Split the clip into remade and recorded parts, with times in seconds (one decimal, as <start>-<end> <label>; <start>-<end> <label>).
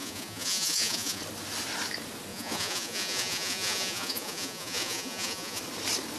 0.0-1.2 remade; 1.2-2.3 recorded; 2.3-5.6 remade; 5.6-6.2 recorded